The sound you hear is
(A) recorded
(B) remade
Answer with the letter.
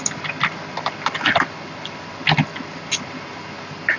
A